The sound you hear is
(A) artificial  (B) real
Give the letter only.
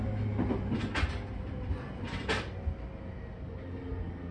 B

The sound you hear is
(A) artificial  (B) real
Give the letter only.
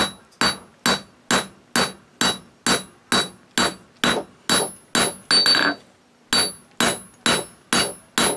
B